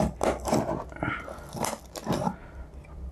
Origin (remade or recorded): recorded